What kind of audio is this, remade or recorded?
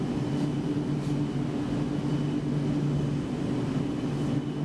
recorded